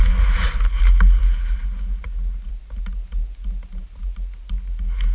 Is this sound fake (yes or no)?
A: no